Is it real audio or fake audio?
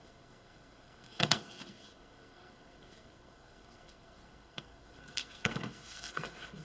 fake